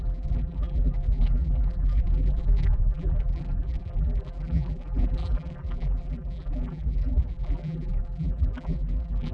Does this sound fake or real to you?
fake